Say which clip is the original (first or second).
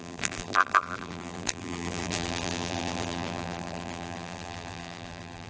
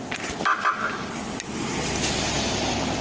second